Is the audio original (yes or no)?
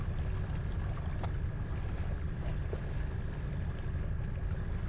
yes